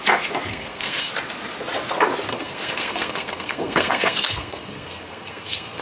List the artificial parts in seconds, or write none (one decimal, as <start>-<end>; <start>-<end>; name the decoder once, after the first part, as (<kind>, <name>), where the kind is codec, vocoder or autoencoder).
0.5-1.1 (codec, SNAC); 2.3-5.8